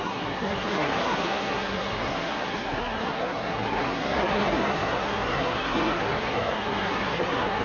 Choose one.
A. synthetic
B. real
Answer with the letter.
A